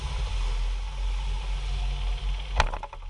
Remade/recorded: recorded